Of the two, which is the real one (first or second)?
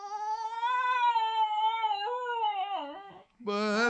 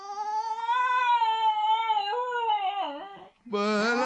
second